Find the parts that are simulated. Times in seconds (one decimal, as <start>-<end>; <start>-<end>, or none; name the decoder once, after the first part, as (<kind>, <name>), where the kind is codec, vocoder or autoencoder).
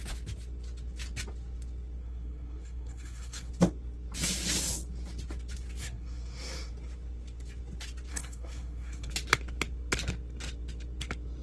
2.0-3.5 (codec, SNAC); 5.8-6.7; 8.1-9.1